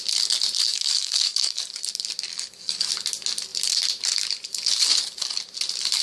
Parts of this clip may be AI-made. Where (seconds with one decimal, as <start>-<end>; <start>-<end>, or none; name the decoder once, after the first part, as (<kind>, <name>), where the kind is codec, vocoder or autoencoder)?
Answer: 0.7-1.8 (codec, DAC); 2.3-2.9